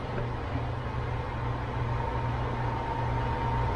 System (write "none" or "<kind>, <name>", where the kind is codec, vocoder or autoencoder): none